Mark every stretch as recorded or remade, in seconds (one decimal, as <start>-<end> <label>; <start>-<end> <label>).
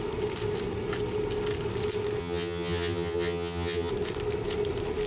0.0-2.2 recorded; 2.2-3.9 remade; 3.9-5.1 recorded